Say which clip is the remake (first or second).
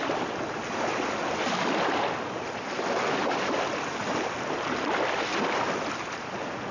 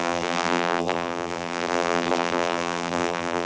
second